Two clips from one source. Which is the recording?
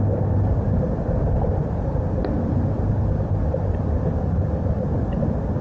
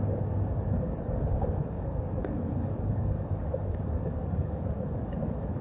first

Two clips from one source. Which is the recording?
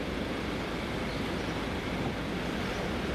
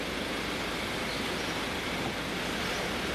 second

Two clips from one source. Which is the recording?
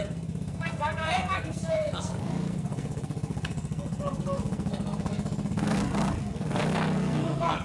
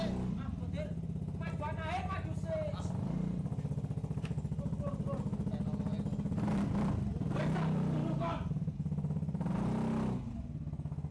second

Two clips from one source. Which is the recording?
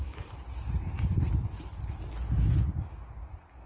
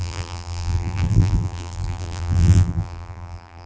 first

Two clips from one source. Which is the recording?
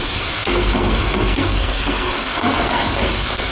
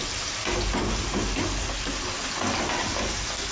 second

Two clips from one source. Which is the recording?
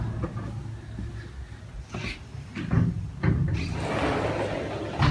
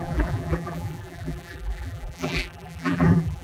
first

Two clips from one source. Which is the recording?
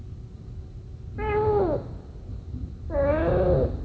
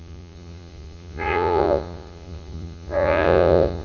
first